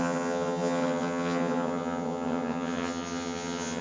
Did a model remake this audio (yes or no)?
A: yes